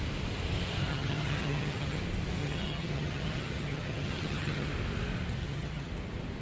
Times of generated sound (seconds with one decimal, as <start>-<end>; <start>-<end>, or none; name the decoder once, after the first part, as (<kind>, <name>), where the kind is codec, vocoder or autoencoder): 0.9-2.0 (vocoder, HiFi-GAN); 2.4-4.7; 5.4-5.9